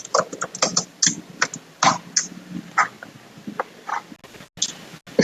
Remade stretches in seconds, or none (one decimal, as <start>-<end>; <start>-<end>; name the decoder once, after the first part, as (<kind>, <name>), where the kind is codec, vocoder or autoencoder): none